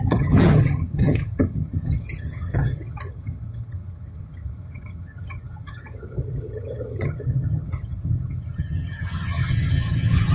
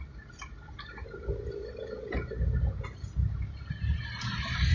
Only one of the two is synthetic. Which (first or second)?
first